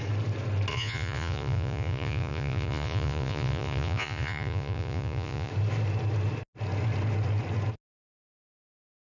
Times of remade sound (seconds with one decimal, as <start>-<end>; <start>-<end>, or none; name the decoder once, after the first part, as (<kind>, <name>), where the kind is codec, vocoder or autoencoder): 0.7-5.5 (vocoder, Vocos)